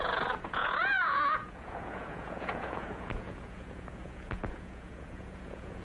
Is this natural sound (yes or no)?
no